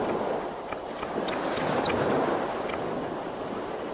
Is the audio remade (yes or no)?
no